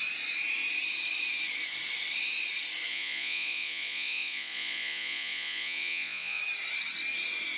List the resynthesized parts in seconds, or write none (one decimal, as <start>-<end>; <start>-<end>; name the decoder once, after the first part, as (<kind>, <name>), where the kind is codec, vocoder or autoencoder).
2.9-6.4 (vocoder, Vocos)